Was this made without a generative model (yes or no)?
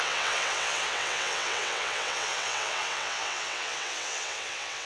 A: no